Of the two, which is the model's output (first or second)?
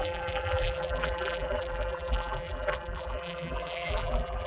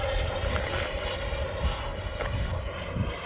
first